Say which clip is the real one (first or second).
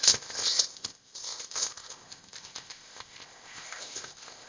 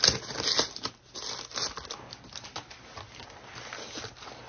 second